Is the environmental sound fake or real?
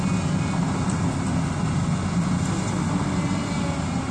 real